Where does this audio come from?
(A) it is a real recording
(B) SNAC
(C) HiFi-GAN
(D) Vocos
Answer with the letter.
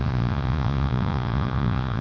D